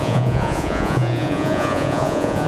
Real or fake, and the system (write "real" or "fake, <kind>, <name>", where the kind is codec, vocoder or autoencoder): fake, vocoder, Vocos